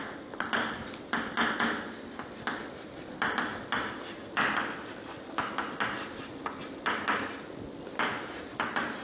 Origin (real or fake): real